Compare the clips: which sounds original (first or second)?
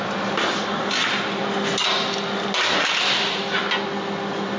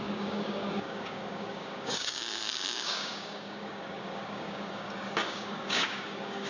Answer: first